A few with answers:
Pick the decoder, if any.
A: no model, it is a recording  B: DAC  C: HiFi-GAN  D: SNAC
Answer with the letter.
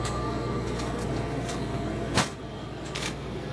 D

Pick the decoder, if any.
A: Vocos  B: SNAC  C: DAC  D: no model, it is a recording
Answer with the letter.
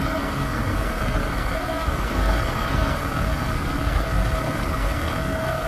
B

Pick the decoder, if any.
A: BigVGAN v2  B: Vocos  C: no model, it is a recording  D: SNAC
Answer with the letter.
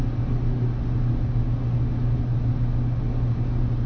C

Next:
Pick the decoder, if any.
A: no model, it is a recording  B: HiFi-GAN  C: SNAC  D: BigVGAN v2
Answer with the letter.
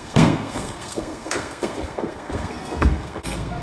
C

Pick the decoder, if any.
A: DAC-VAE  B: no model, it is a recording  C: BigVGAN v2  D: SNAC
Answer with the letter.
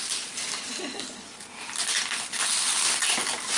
B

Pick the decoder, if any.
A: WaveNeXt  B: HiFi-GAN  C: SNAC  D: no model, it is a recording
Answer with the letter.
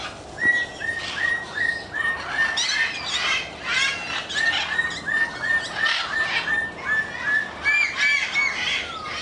D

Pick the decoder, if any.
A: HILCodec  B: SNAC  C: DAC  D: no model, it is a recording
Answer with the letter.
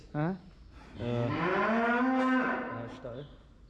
D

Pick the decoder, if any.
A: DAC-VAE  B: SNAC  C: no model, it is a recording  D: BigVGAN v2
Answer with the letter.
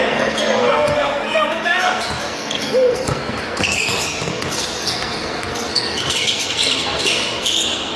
B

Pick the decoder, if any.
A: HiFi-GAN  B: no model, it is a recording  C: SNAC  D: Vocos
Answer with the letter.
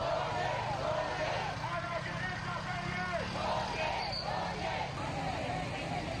B